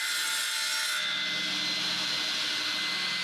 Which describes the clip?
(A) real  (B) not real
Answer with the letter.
A